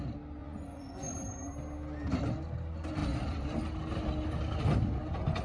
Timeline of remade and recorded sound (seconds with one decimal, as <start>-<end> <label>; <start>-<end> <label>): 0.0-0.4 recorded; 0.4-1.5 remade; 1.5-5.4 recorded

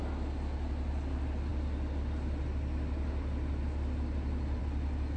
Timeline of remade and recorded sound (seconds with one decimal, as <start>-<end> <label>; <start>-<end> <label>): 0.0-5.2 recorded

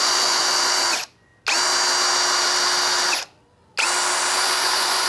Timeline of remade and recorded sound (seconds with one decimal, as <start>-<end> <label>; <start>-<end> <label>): 0.0-1.3 remade; 1.3-4.3 recorded; 4.3-5.1 remade

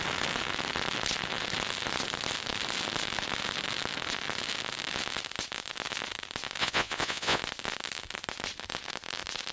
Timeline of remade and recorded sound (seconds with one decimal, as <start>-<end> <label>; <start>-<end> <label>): 0.0-6.6 recorded; 6.6-7.4 remade; 7.4-9.5 recorded

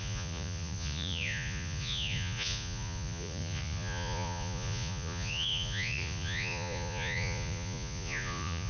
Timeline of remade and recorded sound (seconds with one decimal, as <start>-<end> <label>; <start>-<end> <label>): 0.0-8.7 remade

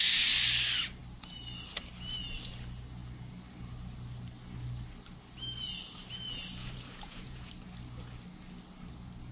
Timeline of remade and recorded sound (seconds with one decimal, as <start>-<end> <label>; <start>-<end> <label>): 0.0-6.6 recorded; 6.6-7.5 remade; 7.5-9.3 recorded